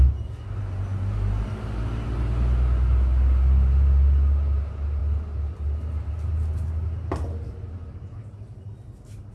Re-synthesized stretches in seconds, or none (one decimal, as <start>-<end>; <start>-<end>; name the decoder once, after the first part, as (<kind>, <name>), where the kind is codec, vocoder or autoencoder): none